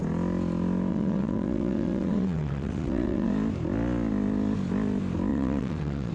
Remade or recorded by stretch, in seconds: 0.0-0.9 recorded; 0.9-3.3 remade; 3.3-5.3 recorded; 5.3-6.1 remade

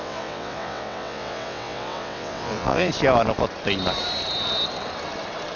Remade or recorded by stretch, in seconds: 0.0-2.9 remade; 2.9-5.6 recorded

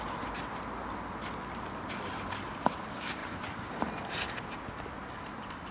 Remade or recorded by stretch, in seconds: 0.0-5.7 recorded

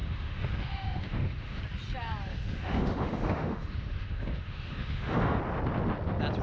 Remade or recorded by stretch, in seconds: 0.0-1.6 remade; 1.6-2.3 recorded; 2.3-5.4 remade; 5.4-6.4 recorded

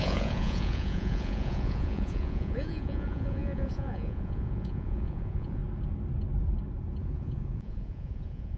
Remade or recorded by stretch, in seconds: 0.0-5.6 remade; 5.6-7.0 recorded; 7.0-8.6 remade

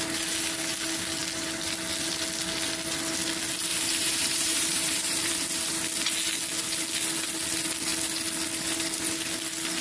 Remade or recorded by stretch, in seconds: 0.0-3.7 recorded; 3.7-5.3 remade; 5.3-9.8 recorded

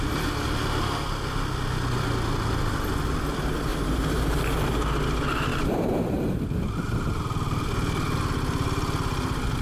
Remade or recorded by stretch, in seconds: 0.0-3.7 recorded; 3.7-4.4 remade; 4.4-5.5 recorded; 5.5-6.2 remade; 6.2-9.6 recorded

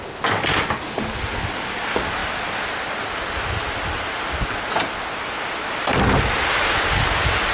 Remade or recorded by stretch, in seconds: 0.0-7.5 recorded